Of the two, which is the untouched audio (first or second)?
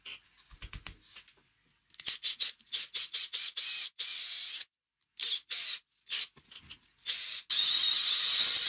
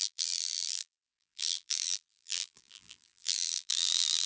first